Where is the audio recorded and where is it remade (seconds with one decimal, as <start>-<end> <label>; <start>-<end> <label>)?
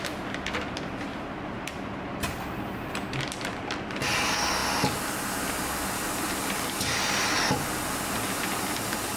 0.0-9.2 recorded